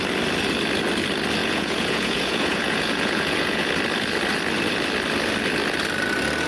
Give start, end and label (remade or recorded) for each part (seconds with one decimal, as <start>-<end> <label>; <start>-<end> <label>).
0.0-1.4 recorded; 1.4-3.7 remade; 3.7-6.5 recorded